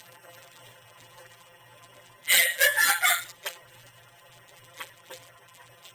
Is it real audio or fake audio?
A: fake